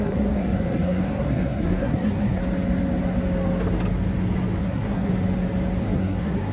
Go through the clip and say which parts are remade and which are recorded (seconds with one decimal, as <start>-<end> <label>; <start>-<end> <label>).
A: 0.0-2.4 remade; 2.4-4.6 recorded; 4.6-5.1 remade; 5.1-5.8 recorded; 5.8-6.5 remade